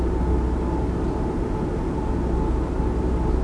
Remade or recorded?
recorded